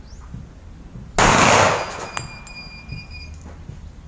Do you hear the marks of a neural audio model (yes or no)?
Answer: no